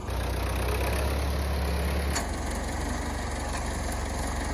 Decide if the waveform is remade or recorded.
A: recorded